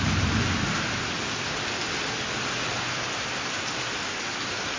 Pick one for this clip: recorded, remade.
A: recorded